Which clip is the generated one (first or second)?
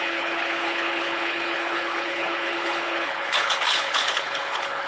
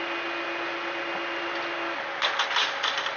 first